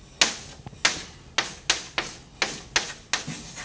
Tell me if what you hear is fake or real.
real